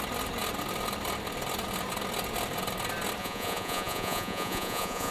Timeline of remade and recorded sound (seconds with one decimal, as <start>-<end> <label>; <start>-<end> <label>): 0.0-3.2 recorded; 3.2-5.1 remade